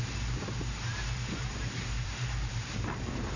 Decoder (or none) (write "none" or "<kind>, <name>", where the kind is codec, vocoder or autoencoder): vocoder, BigVGAN v2